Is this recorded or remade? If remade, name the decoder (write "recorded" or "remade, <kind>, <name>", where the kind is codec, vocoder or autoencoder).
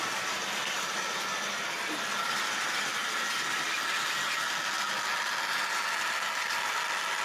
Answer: recorded